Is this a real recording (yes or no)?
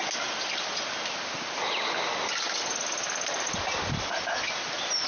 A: yes